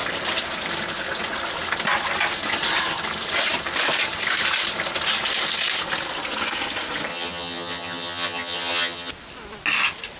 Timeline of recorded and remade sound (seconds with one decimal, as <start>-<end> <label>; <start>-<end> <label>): 0.0-7.1 recorded; 7.1-9.1 remade; 9.1-10.2 recorded